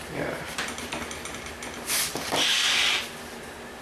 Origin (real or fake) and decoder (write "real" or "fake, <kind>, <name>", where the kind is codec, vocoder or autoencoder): real